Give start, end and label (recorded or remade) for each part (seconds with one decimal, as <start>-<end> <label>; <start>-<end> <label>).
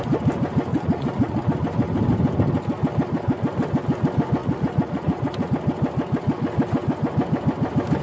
0.0-0.7 recorded; 0.7-1.4 remade; 1.4-4.4 recorded; 4.4-5.5 remade; 5.5-8.0 recorded